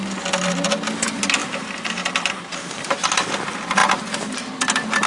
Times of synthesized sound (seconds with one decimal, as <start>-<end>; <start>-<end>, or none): none